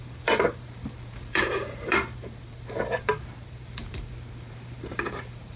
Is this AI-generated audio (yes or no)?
yes